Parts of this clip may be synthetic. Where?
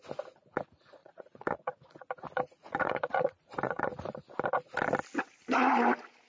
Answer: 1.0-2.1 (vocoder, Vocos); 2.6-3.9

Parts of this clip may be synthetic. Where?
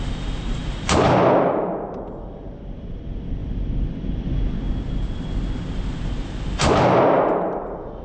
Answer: none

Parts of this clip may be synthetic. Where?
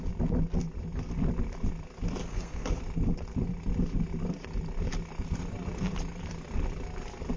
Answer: 2.2-2.8 (codec, SNAC)